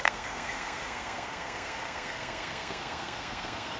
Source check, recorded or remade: remade